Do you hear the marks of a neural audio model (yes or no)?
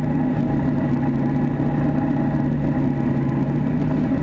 no